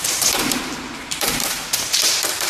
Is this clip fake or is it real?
fake